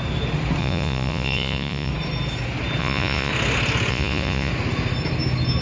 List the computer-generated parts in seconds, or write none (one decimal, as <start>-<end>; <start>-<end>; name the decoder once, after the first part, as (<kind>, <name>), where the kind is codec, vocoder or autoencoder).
0.6-1.9 (vocoder, Vocos); 2.8-3.3; 3.9-4.5